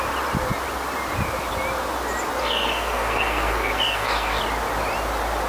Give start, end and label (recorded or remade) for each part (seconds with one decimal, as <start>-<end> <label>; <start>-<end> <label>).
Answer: 0.0-2.4 recorded; 2.4-4.4 remade; 4.4-5.5 recorded